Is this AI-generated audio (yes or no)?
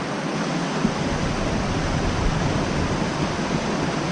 no